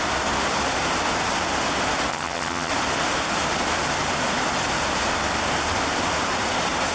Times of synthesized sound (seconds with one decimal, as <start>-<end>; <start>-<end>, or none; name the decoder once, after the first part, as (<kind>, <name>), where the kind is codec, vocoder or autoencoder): 2.1-2.7 (vocoder, HiFi-GAN)